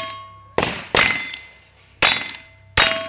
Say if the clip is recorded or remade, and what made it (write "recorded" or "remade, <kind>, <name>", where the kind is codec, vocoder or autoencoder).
recorded